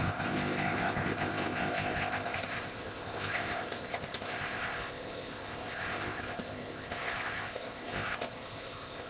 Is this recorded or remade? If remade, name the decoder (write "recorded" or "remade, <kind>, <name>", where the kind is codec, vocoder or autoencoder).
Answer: remade, codec, ZipCodec